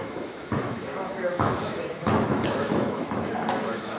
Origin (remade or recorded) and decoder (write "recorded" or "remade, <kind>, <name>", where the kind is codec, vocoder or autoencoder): remade, autoencoder, DAC-VAE